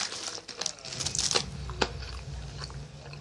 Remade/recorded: recorded